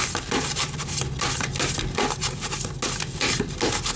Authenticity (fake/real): real